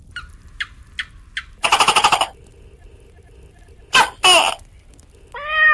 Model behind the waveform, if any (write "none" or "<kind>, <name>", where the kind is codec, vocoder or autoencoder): none